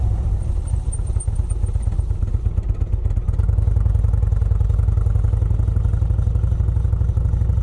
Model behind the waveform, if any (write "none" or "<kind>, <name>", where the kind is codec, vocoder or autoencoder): none